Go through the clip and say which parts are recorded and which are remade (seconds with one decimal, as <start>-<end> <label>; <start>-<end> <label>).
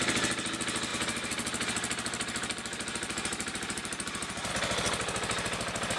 0.0-0.9 recorded; 0.9-4.5 remade; 4.5-6.0 recorded